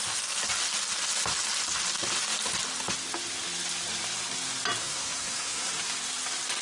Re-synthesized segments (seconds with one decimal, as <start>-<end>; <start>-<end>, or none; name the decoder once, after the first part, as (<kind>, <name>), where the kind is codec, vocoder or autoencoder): 4.8-5.7 (codec, SNAC)